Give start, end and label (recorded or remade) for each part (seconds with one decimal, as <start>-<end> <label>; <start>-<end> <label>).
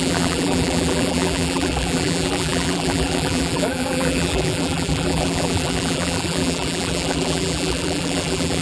0.0-8.6 remade